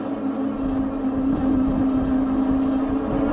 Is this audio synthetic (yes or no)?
no